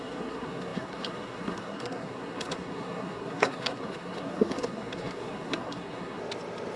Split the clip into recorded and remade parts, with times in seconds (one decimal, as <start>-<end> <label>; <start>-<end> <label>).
0.0-6.2 remade; 6.2-6.8 recorded